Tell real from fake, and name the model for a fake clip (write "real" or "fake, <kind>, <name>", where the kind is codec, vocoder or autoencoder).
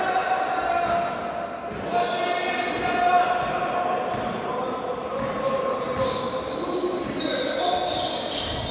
real